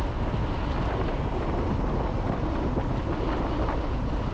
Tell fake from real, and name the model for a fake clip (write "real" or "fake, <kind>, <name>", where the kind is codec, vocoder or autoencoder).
real